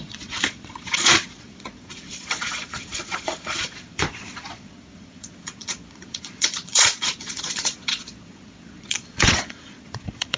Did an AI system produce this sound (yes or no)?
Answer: yes